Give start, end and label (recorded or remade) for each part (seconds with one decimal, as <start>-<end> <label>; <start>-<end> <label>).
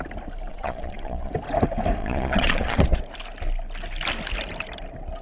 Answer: 0.0-0.5 recorded; 0.5-1.3 remade; 1.3-2.0 recorded; 2.0-3.0 remade; 3.0-5.2 recorded